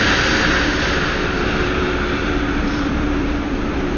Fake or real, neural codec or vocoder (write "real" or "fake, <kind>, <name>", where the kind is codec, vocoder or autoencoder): fake, vocoder, BigVGAN v2